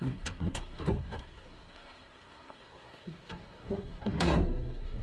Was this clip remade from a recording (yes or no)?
yes